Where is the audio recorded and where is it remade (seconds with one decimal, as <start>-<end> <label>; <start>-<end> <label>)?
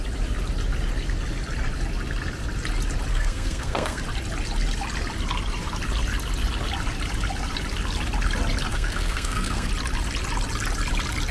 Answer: 0.0-3.1 recorded; 3.1-4.0 remade; 4.0-8.7 recorded; 8.7-9.7 remade; 9.7-11.3 recorded